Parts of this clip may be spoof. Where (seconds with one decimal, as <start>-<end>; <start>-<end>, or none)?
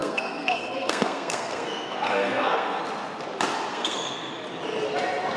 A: 0.0-2.8; 3.7-4.3